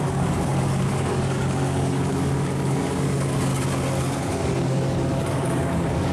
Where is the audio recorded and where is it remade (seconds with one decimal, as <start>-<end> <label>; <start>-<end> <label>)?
0.0-3.5 remade; 3.5-4.0 recorded; 4.0-6.1 remade